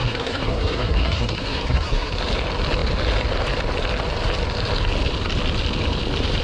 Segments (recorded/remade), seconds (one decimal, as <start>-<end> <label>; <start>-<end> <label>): 0.0-2.1 remade; 2.1-6.4 recorded